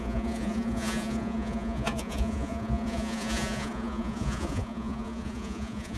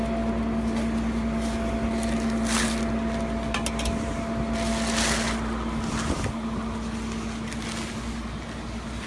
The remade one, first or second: first